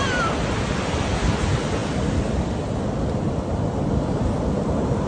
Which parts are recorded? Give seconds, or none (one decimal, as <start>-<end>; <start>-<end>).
0.0-5.1